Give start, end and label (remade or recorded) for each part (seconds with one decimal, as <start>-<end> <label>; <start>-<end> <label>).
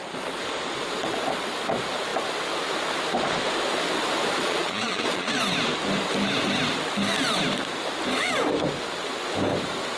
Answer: 0.0-4.4 recorded; 4.4-5.4 remade; 5.4-10.0 recorded